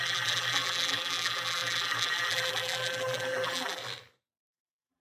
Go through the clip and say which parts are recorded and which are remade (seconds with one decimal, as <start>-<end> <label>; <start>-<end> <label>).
0.0-3.8 remade; 3.8-4.4 recorded; 4.4-5.0 remade